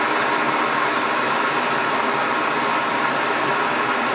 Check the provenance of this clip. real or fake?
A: real